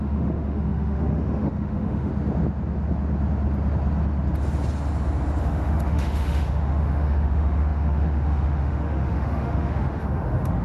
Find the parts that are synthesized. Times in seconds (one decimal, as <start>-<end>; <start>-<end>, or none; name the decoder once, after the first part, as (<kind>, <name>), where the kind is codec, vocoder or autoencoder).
0.0-2.1 (autoencoder, DAC-VAE); 5.4-10.6